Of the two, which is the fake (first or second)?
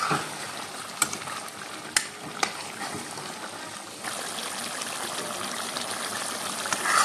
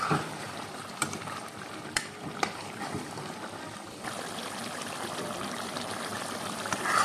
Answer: second